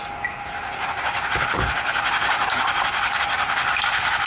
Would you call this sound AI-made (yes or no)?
no